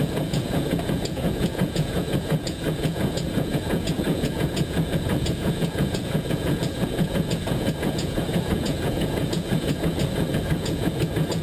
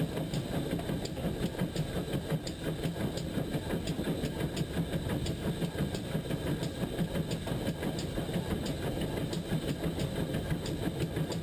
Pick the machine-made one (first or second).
first